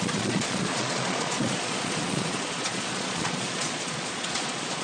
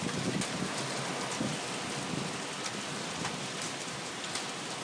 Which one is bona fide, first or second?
second